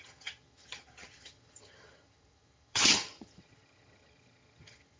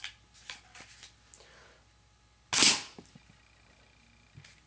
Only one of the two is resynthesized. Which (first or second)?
first